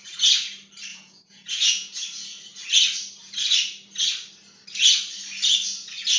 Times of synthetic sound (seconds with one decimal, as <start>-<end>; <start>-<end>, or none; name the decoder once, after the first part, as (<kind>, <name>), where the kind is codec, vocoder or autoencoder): 0.9-2.0 (vocoder, Vocos)